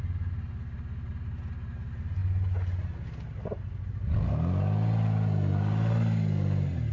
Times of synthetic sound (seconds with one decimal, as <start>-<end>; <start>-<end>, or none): none

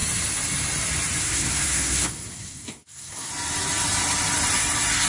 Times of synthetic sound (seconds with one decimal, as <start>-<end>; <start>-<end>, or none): 1.2-3.3